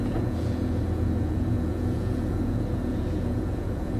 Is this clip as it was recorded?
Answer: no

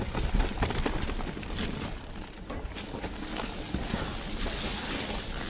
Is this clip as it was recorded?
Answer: yes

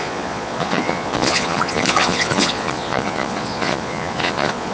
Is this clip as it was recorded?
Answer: no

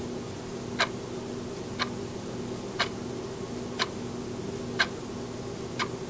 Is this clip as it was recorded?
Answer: yes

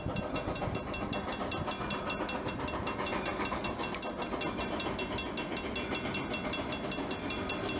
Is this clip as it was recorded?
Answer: yes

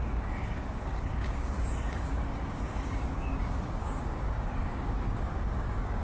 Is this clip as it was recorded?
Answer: no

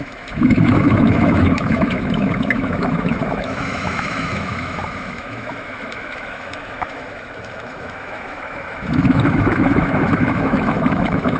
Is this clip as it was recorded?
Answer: no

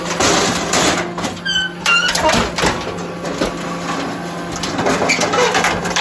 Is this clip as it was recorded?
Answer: yes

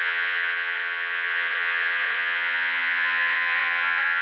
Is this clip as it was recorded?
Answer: no